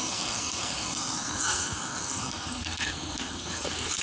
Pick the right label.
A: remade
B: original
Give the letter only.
A